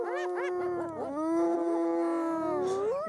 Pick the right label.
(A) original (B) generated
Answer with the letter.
A